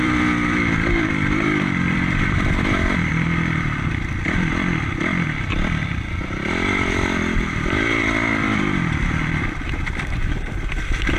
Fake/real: fake